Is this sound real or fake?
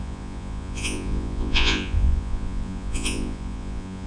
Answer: fake